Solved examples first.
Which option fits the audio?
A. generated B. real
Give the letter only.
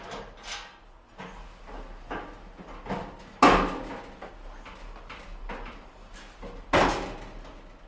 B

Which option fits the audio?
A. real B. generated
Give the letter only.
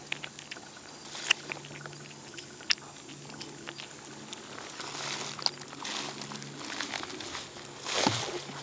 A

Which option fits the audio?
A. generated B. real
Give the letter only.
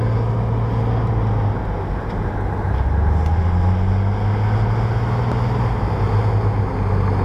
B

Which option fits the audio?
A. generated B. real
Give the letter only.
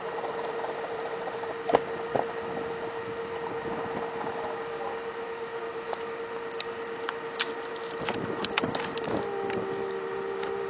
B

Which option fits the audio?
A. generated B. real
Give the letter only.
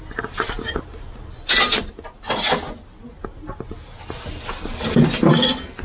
B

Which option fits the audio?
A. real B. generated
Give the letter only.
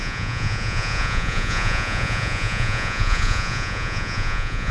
B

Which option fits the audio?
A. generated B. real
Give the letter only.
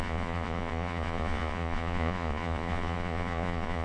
A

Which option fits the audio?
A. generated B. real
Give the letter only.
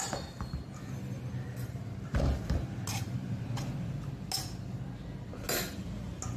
B